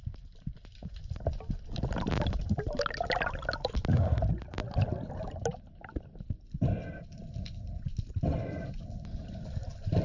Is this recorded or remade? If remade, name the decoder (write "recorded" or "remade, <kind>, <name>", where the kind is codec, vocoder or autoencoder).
recorded